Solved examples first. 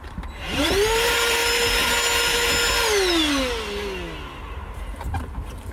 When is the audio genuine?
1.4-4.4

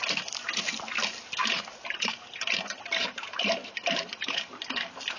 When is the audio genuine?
0.0-1.4; 4.5-5.2